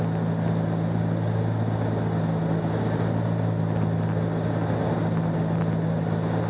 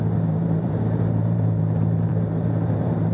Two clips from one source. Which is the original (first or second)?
first